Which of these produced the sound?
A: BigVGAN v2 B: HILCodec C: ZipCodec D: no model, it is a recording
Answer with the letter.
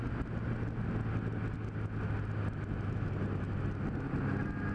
D